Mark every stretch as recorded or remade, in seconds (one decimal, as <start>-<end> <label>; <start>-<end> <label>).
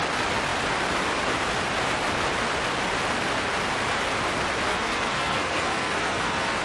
0.0-4.7 recorded; 4.7-6.6 remade